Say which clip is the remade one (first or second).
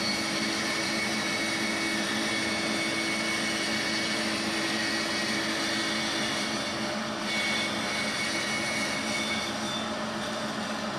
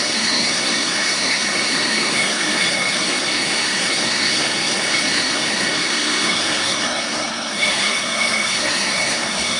second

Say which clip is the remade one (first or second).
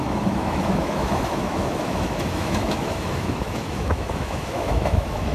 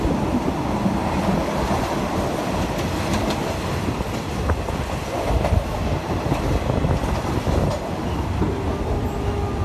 first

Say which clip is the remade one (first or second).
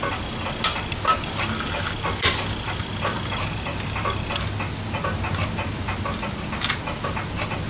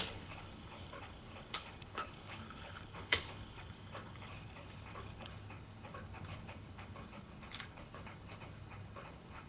second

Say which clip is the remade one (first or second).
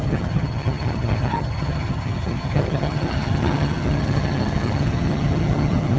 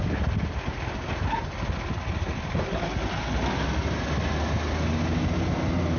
first